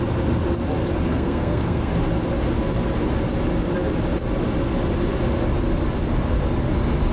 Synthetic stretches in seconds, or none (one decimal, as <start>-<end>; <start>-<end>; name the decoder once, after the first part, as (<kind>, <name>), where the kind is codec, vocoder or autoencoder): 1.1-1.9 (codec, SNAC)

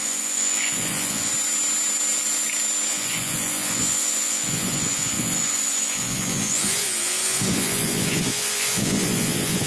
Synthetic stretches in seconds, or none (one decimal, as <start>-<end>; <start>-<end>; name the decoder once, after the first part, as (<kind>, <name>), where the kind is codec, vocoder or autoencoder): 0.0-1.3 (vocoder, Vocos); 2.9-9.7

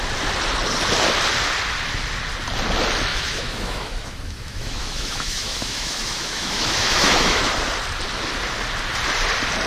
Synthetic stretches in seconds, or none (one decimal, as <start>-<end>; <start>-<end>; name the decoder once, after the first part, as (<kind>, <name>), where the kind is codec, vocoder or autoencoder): 3.1-7.4 (autoencoder, DAC-VAE)